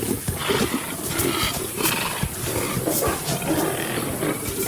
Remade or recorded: recorded